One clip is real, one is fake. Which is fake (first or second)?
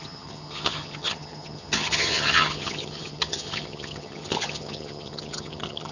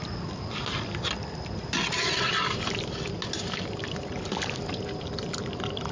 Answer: first